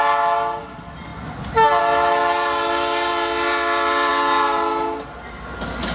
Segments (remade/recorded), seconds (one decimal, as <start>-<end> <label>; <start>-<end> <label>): 0.0-5.9 recorded